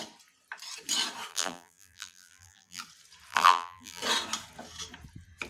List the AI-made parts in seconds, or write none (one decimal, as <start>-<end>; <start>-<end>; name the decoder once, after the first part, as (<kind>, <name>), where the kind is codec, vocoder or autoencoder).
1.3-2.8 (vocoder, BigVGAN v2); 3.3-4.0